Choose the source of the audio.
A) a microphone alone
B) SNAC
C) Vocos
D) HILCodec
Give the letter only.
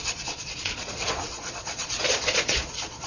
C